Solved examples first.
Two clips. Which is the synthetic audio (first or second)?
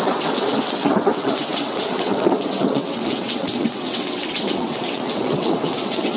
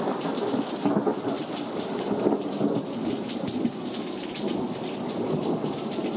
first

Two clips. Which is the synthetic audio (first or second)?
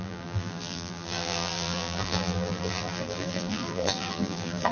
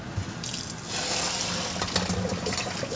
first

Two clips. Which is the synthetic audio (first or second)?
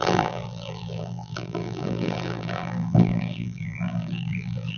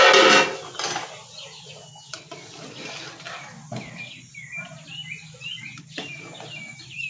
first